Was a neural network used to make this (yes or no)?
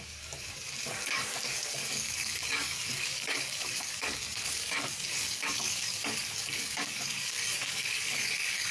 yes